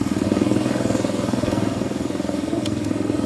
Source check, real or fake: fake